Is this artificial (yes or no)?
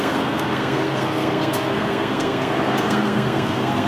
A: yes